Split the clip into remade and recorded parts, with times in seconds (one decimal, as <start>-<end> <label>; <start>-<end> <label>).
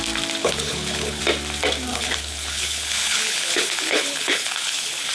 0.0-0.4 recorded; 0.4-1.2 remade; 1.2-1.9 recorded; 1.9-5.1 remade